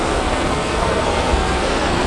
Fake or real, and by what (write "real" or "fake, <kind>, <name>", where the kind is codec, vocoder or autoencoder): fake, codec, SNAC